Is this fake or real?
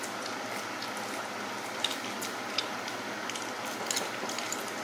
real